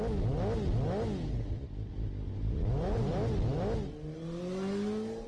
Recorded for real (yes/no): yes